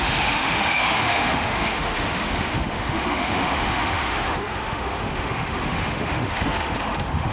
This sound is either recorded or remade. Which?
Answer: remade